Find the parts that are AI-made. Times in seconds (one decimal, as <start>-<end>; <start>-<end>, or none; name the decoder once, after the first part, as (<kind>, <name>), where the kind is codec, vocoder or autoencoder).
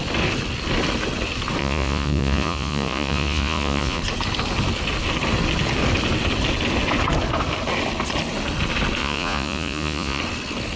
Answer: 1.6-4.0 (vocoder, Vocos); 9.0-10.2